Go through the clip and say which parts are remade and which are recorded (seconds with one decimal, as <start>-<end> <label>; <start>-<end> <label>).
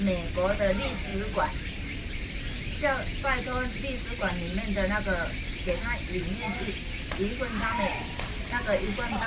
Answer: 0.0-9.3 recorded